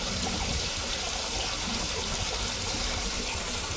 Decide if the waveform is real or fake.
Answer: real